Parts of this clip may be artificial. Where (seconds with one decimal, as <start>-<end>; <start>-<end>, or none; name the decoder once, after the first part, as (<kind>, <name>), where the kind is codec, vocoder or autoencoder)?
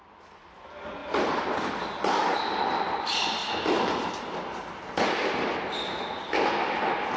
none